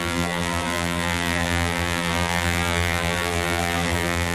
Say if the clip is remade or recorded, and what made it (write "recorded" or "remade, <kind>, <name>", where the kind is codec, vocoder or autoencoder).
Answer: remade, vocoder, BigVGAN v2